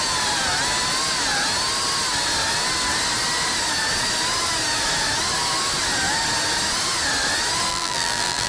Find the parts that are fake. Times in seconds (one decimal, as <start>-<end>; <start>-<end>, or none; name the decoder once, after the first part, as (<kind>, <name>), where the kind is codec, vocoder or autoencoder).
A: 7.7-8.5 (vocoder, BigVGAN v2)